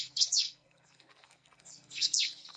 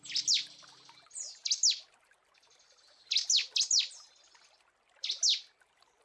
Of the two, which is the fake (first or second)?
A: first